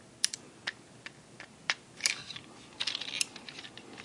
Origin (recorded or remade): recorded